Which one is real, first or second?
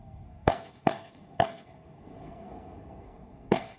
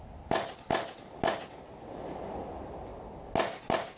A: second